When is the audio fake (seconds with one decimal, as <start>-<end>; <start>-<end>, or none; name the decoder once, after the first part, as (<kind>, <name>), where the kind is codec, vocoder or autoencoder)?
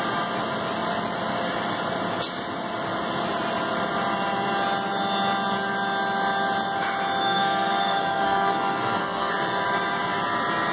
7.2-9.3 (codec, SNAC)